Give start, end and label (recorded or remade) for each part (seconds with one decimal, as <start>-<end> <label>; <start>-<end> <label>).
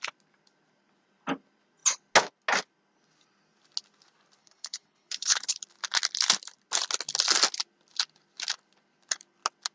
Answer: 0.0-4.4 recorded; 4.4-5.6 remade; 5.6-9.7 recorded